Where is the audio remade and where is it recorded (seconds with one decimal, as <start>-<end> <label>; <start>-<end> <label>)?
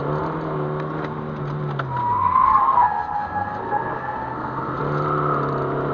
0.0-2.6 recorded; 2.6-4.8 remade; 4.8-5.9 recorded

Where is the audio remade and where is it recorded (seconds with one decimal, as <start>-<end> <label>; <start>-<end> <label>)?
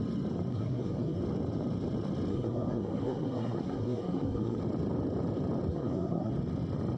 0.0-0.5 recorded; 0.5-1.2 remade; 1.2-2.3 recorded; 2.3-4.6 remade; 4.6-5.7 recorded; 5.7-6.3 remade; 6.3-7.0 recorded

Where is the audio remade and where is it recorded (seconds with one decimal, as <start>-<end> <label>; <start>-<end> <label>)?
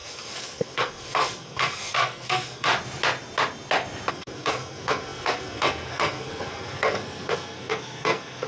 0.0-2.7 remade; 2.7-4.1 recorded; 4.1-8.5 remade